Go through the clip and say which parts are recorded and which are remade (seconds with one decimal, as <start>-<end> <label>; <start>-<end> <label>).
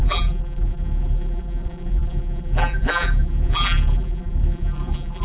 0.0-5.2 remade